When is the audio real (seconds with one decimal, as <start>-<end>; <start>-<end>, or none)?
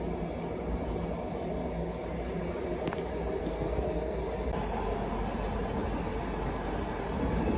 0.0-3.4; 4.2-7.6